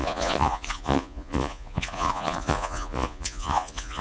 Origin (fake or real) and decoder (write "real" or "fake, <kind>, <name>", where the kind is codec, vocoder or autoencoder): fake, vocoder, Vocos